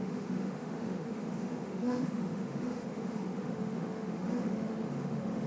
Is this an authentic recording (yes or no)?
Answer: no